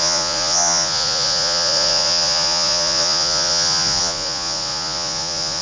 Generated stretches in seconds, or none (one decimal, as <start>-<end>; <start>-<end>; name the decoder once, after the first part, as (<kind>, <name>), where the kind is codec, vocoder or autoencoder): 0.0-5.6 (vocoder, Vocos)